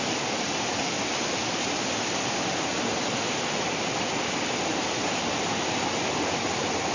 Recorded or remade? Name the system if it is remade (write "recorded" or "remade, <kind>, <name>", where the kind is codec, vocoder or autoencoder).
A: recorded